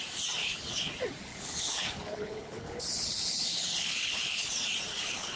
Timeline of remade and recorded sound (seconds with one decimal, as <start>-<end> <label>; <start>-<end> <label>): 0.0-0.4 recorded; 0.4-0.9 remade; 0.9-1.3 recorded; 1.3-4.5 remade; 4.5-4.9 recorded; 4.9-5.4 remade